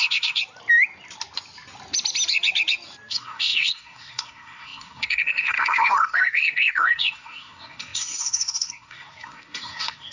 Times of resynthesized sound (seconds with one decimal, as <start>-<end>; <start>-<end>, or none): 0.0-0.4; 3.1-10.1